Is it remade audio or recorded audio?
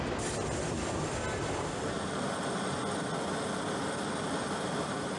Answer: recorded